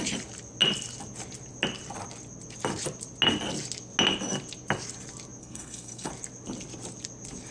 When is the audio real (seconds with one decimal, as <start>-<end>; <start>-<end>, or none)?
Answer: 0.0-5.4; 6.1-7.5